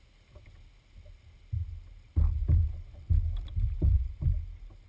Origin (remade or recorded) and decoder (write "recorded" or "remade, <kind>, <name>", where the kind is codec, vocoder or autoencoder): recorded